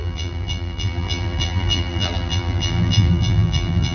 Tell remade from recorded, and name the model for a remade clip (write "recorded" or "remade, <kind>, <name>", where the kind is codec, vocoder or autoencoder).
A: remade, vocoder, BigVGAN v2